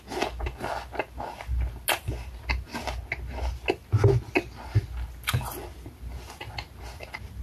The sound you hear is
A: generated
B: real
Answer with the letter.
B